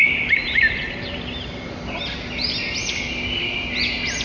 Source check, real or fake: real